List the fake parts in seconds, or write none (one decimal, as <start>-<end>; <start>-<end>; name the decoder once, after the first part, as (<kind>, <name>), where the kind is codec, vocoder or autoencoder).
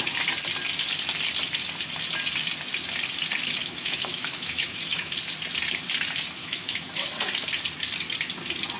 3.6-5.1 (autoencoder, DAC-VAE); 6.4-7.1